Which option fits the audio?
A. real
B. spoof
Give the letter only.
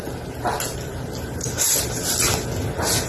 A